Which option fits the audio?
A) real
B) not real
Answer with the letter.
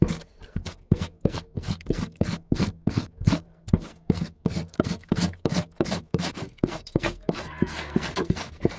B